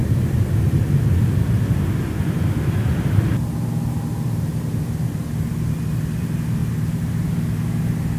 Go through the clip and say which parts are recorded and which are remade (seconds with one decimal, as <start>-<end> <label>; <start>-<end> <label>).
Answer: 0.0-8.2 recorded